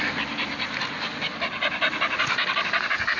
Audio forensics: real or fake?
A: real